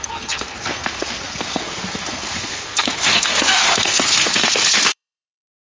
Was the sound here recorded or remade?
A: remade